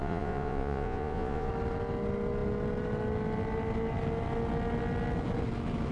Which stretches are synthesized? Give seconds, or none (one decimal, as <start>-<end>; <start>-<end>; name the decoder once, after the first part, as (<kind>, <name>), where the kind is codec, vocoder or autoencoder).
0.0-1.5 (vocoder, Vocos)